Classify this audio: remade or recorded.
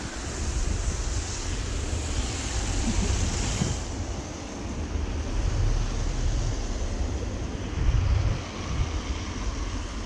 recorded